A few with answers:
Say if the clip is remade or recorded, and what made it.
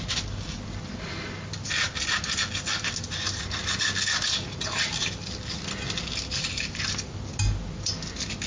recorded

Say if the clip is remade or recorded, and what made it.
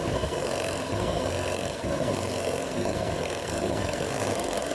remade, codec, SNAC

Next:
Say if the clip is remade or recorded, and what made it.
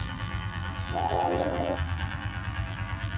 remade, vocoder, BigVGAN v2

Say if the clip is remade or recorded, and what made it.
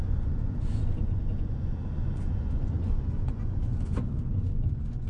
remade, vocoder, Vocos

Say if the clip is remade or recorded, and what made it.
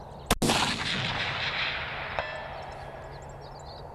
recorded